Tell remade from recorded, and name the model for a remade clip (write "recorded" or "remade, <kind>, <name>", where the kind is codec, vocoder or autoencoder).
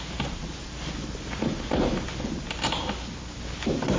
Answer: recorded